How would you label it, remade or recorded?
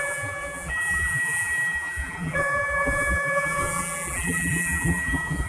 remade